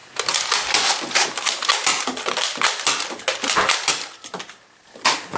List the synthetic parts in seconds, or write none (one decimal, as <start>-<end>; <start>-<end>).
none